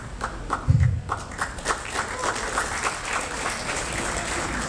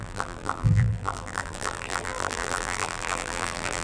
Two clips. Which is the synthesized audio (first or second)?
second